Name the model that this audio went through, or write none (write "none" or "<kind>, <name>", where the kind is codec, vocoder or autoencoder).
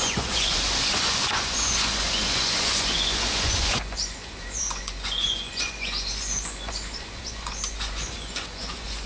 vocoder, Vocos